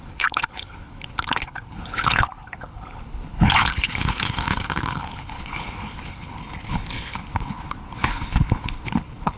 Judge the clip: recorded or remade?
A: remade